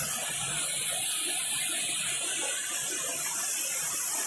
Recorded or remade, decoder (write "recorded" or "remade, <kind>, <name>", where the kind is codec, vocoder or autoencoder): recorded